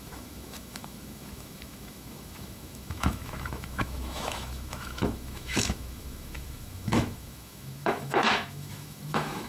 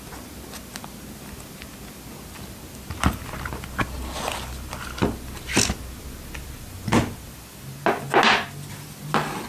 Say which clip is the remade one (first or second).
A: first